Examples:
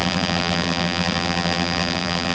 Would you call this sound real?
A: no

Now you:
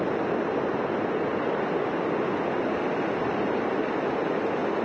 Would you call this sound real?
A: yes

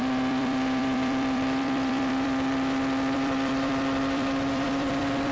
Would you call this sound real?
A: no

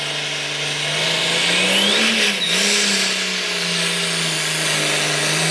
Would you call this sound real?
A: yes